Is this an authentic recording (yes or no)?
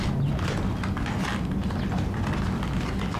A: yes